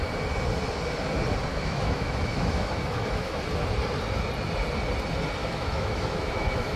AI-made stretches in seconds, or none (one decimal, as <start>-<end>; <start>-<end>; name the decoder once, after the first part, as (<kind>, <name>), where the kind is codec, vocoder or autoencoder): 1.5-3.4 (autoencoder, DAC-VAE); 5.4-6.8

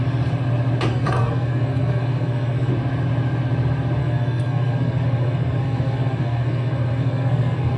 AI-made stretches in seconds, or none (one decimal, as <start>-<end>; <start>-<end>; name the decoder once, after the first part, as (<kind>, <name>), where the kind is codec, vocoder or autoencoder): 0.9-2.7 (codec, SNAC); 4.0-7.8

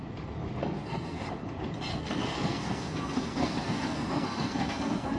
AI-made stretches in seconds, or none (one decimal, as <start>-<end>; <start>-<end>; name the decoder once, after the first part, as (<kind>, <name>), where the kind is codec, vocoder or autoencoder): 0.6-1.2 (codec, SNAC); 1.9-5.2

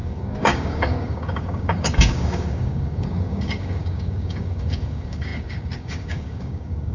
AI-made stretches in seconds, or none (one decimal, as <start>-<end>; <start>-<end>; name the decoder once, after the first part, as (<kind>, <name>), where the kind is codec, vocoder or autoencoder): 0.0-6.9 (codec, DAC)

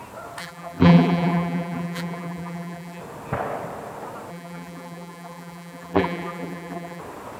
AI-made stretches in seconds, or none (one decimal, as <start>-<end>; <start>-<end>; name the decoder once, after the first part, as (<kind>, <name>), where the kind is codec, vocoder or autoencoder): 0.4-3.0 (vocoder, BigVGAN v2); 4.3-7.0

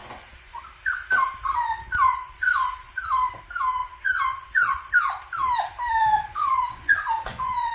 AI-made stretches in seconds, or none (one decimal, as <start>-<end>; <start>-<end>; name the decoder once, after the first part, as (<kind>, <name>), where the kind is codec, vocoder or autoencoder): 0.0-0.6 (vocoder, Vocos); 1.5-3.0; 3.8-4.9; 6.4-7.7

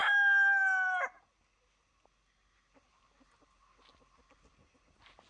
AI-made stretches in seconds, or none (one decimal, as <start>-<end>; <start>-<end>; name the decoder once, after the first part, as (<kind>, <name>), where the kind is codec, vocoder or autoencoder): none

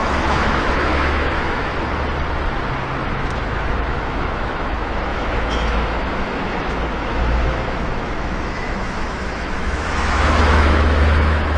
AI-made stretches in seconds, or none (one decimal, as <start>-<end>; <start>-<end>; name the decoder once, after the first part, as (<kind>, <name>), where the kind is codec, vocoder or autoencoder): 0.0-1.7 (autoencoder, DAC-VAE); 3.1-11.6